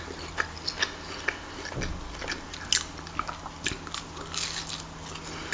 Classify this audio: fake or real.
real